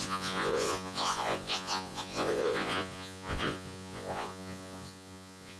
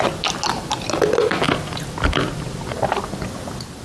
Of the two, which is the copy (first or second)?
first